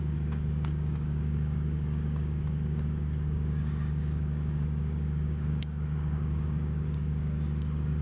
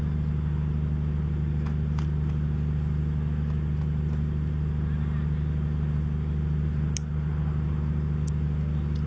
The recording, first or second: second